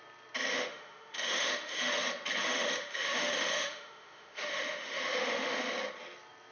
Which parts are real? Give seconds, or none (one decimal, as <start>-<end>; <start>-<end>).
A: 0.0-0.5; 2.0-2.4; 5.7-6.5